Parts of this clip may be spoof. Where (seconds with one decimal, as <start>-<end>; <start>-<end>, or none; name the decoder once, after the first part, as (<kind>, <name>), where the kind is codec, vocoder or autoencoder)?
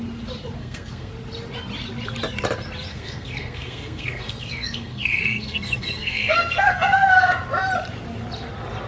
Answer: 0.6-1.1 (codec, SNAC); 2.9-7.3